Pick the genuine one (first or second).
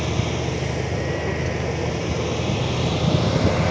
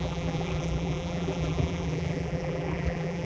first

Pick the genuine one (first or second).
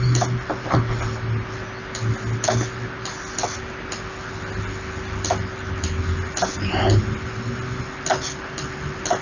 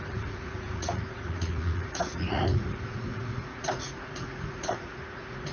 first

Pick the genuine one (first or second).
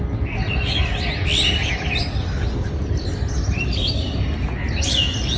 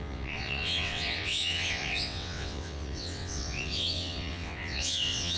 first